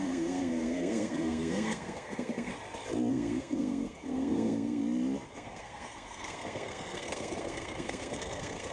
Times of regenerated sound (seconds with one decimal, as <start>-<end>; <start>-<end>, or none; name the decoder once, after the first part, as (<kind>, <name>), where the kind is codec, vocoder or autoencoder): 0.0-2.5 (codec, SNAC); 3.1-4.8; 5.3-8.7